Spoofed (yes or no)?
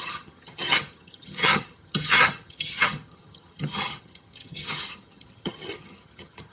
yes